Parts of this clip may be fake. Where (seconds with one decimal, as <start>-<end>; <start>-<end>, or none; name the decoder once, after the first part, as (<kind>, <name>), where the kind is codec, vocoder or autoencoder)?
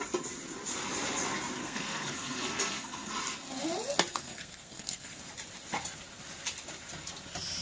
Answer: 1.6-3.1 (codec, SNAC); 4.1-5.2